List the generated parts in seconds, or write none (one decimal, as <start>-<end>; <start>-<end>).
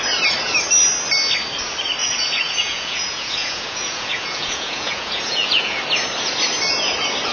2.0-5.8